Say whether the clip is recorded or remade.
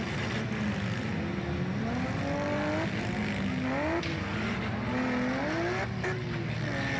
recorded